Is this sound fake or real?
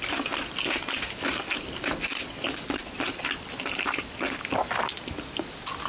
real